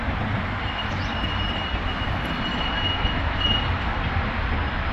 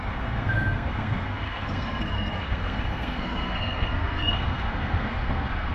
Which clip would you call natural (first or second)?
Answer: first